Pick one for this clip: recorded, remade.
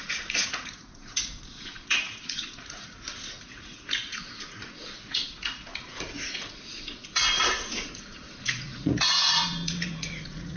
remade